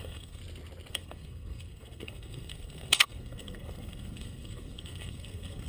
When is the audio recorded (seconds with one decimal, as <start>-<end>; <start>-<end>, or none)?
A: 0.4-0.9